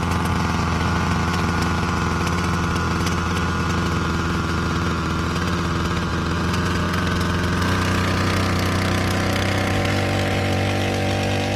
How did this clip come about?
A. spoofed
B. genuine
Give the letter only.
B